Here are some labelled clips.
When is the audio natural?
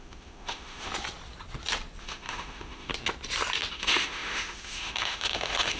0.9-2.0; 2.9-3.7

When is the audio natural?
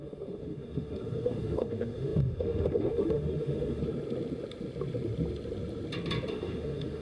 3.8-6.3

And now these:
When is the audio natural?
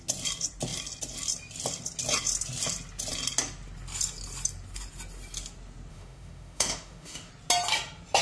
0.0-5.9; 7.3-8.2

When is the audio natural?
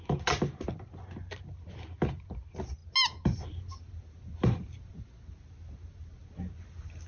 0.0-7.1